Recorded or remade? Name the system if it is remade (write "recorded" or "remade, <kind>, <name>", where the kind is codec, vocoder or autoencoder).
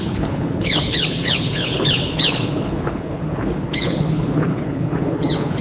remade, codec, HILCodec